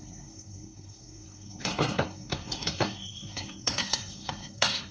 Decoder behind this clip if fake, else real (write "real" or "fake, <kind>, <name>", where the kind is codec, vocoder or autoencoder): fake, codec, SNAC